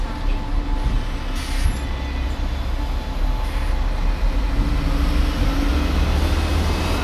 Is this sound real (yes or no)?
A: yes